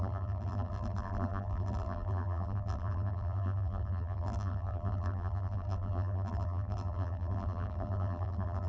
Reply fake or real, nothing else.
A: fake